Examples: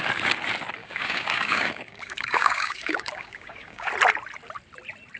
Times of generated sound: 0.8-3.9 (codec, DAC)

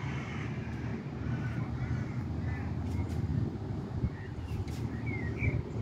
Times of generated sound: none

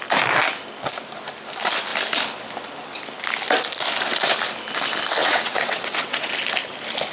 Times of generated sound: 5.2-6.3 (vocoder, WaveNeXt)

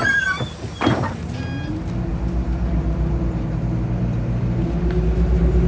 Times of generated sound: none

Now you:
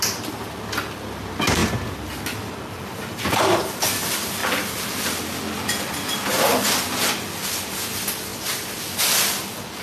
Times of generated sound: none

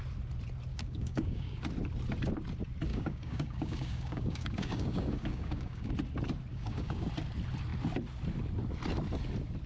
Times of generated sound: 0.7-1.6 (codec, DAC); 2.9-5.9; 6.5-7.1

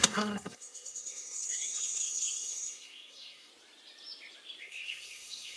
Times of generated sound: 0.0-3.5 (codec, SNAC); 4.6-5.6

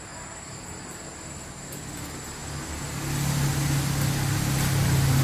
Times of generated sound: none